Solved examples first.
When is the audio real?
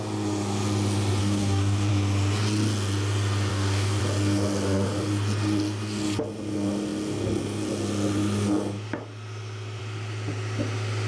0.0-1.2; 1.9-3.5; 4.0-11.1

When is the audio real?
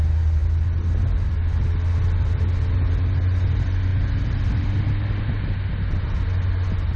0.0-7.0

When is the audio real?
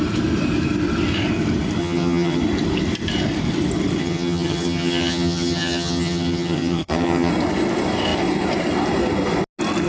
0.0-1.8; 2.4-4.0; 7.3-9.9